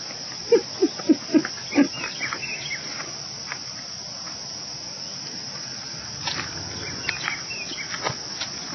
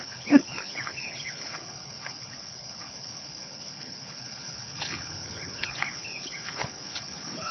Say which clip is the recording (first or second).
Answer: first